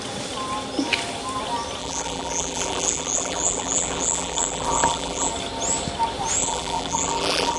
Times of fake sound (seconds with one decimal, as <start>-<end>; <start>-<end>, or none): 1.8-5.3; 6.4-7.6